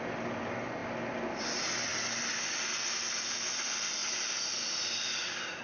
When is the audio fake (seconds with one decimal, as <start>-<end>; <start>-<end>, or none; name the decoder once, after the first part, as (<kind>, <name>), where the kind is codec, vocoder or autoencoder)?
none